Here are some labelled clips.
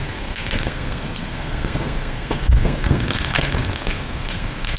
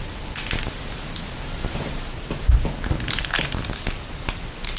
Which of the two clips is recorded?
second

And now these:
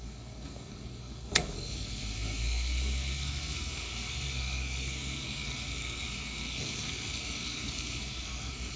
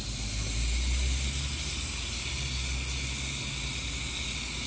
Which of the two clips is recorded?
second